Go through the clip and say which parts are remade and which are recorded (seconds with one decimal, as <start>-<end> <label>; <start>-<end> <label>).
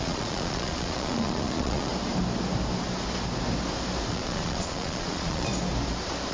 0.0-1.9 remade; 1.9-4.1 recorded; 4.1-5.5 remade; 5.5-6.3 recorded